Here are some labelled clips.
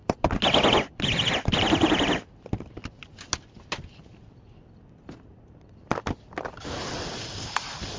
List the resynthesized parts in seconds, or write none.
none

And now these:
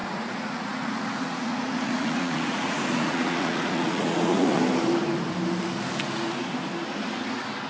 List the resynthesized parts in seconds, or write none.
0.0-4.6 (vocoder, Vocos)

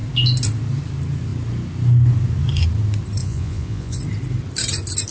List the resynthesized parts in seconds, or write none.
3.2-4.0 (vocoder, Vocos)

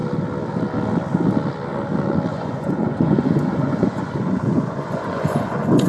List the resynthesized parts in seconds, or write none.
2.3-5.9 (vocoder, Vocos)

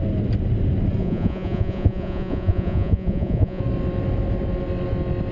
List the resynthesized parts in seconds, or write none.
1.0-3.6 (vocoder, Vocos)

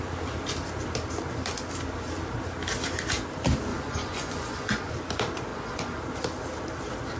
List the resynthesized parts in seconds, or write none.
3.7-4.9 (vocoder, Vocos); 5.5-6.0